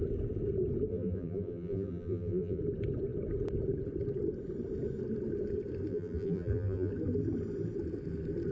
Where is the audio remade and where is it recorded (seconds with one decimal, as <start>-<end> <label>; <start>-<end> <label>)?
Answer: 0.0-0.9 recorded; 0.9-2.6 remade; 2.6-5.9 recorded; 5.9-6.9 remade; 6.9-8.5 recorded